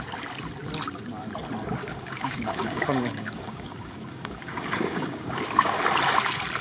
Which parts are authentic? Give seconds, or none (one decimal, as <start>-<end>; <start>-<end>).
0.0-1.8; 5.8-6.6